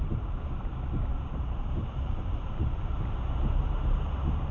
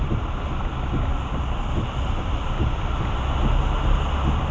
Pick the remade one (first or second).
first